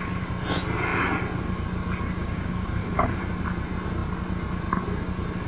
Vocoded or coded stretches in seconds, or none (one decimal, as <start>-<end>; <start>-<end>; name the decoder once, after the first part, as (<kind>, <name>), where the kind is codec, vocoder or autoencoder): 2.2-3.2 (codec, DAC)